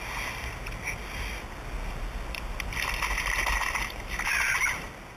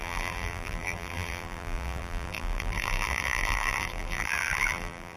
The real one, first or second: first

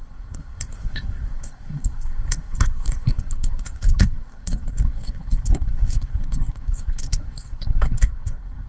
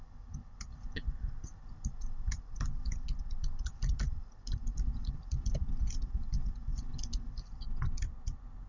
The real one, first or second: second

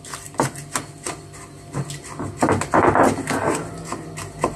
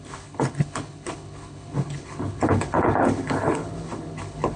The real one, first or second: first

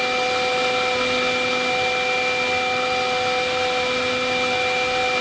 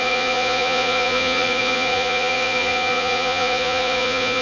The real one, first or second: first